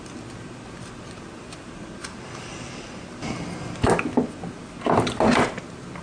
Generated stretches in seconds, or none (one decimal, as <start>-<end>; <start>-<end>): none